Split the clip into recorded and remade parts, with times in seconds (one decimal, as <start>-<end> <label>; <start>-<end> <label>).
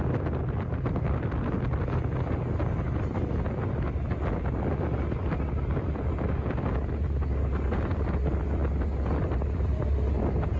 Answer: 0.0-10.6 recorded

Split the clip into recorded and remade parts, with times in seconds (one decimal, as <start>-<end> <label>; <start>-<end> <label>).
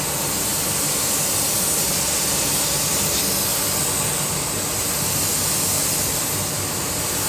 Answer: 0.0-7.3 recorded